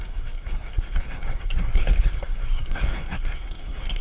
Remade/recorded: remade